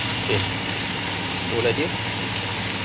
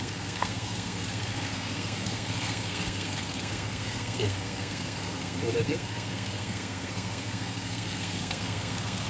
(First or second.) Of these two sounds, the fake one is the second